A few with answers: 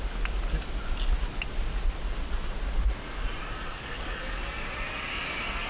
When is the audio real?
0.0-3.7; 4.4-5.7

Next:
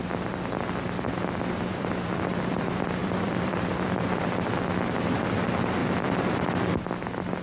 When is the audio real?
0.0-1.7; 2.6-3.0; 5.3-5.8; 6.3-7.4

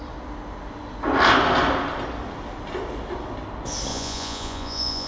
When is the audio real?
0.0-3.9